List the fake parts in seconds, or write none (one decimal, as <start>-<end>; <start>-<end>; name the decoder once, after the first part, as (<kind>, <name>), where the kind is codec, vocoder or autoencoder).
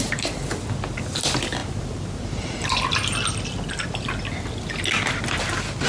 none